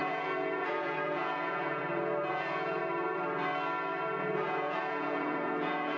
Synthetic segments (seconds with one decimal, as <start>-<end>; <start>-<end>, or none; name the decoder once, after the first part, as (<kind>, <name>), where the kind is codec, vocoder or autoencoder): 0.0-1.8 (vocoder, Vocos); 2.3-2.8; 4.2-6.0